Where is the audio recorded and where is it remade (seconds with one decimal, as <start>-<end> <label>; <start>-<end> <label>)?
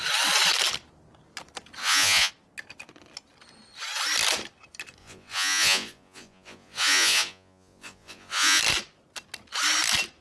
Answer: 0.0-1.8 recorded; 1.8-2.3 remade; 2.3-5.0 recorded; 5.0-8.6 remade; 8.6-10.2 recorded